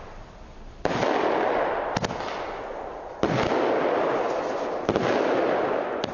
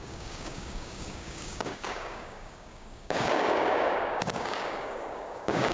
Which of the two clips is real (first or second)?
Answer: first